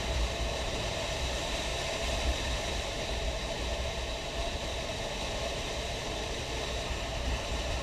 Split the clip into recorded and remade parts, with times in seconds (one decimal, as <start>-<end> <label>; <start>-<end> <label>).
0.0-4.7 remade; 4.7-5.3 recorded; 5.3-7.8 remade